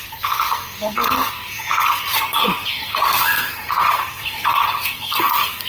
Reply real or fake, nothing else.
fake